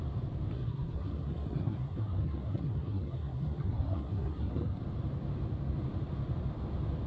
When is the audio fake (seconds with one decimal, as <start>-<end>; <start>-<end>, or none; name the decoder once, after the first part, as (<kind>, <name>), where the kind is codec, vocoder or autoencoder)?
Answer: 0.5-4.8 (codec, SNAC)